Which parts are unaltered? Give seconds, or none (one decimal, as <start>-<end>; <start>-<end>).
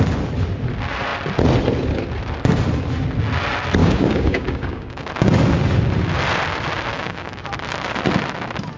0.0-3.8; 5.1-6.9; 7.5-8.8